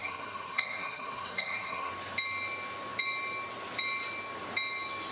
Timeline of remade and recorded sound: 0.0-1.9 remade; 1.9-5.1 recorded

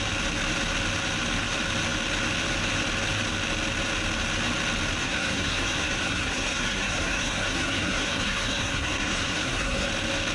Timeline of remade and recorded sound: 0.0-5.0 recorded; 5.0-9.9 remade; 9.9-10.3 recorded

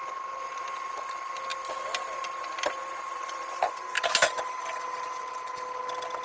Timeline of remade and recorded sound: 0.0-6.2 recorded

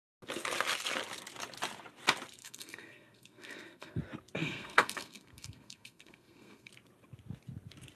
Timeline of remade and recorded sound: 0.0-2.4 recorded; 2.4-4.0 remade; 4.0-4.4 recorded; 4.4-6.7 remade; 6.7-8.0 recorded

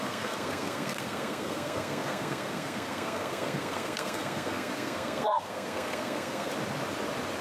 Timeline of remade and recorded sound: 0.0-6.5 remade; 6.5-7.4 recorded

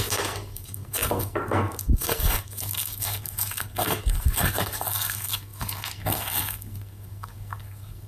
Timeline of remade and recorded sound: 0.0-8.1 remade